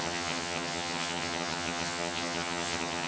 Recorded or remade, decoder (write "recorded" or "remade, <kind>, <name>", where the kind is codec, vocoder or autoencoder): remade, vocoder, HiFi-GAN